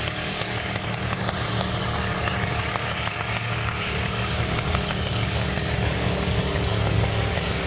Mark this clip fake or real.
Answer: fake